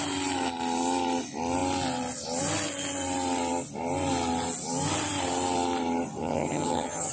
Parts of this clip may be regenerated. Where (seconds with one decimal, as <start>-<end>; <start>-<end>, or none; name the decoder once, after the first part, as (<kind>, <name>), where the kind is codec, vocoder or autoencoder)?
6.2-7.1 (vocoder, HiFi-GAN)